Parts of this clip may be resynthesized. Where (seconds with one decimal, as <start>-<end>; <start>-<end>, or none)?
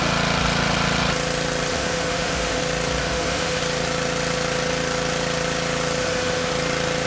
1.7-2.6; 3.0-3.6; 6.0-6.5